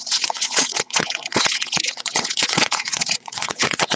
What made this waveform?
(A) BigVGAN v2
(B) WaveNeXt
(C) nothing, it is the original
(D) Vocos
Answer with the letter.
B